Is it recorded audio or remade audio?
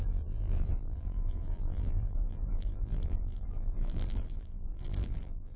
remade